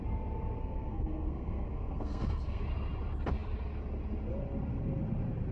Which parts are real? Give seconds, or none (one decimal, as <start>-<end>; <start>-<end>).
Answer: 0.0-0.6; 2.6-5.5